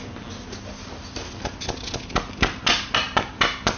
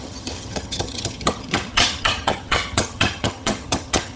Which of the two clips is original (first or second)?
first